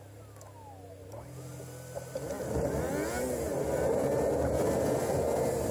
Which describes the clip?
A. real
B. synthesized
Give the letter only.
A